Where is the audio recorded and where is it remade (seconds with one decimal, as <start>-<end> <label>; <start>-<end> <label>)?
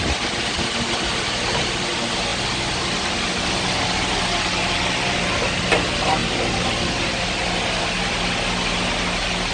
0.0-9.5 recorded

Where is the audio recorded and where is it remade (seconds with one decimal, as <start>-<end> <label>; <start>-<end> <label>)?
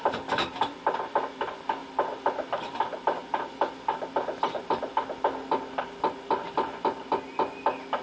0.0-8.0 recorded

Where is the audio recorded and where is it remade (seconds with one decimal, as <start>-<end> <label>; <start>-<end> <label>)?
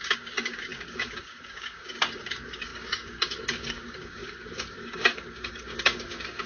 0.0-6.5 remade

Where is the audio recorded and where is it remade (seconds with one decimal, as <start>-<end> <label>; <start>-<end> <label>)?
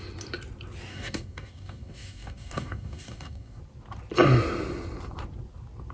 0.0-0.9 recorded; 0.9-3.6 remade; 3.6-5.9 recorded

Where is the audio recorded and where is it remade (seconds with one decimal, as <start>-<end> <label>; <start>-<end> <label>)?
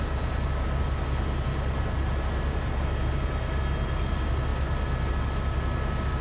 0.0-6.2 recorded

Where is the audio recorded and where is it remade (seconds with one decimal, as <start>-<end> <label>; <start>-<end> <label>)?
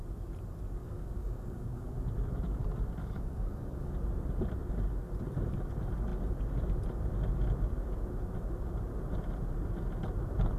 0.0-0.8 recorded; 0.8-1.9 remade; 1.9-3.0 recorded; 3.0-3.9 remade; 3.9-10.6 recorded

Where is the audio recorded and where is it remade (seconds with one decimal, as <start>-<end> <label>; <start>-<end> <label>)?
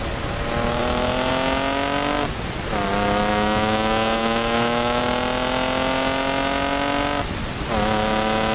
0.0-3.3 recorded; 3.3-5.0 remade; 5.0-8.5 recorded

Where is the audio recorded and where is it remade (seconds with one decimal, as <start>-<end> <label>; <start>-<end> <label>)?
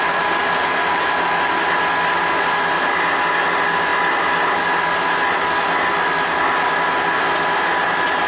0.0-8.3 recorded